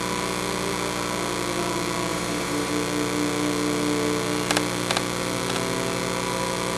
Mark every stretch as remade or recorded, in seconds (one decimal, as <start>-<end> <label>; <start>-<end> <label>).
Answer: 0.0-2.1 recorded; 2.1-2.7 remade; 2.7-6.8 recorded